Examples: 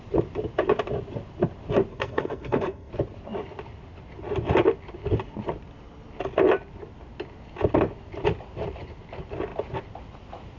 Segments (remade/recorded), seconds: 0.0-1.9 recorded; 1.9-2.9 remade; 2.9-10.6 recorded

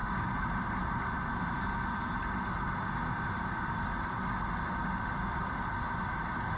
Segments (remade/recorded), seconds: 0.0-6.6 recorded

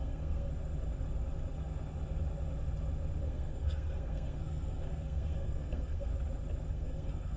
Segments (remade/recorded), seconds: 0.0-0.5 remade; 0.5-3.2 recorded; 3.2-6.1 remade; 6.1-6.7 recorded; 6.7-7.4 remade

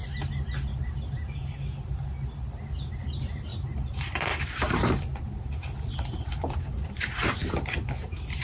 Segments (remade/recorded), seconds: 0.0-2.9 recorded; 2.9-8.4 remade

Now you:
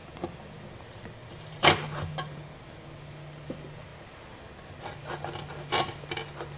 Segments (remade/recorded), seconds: 0.0-1.2 recorded; 1.2-2.4 remade; 2.4-6.6 recorded

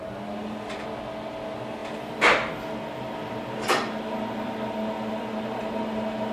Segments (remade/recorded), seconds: 0.0-6.3 recorded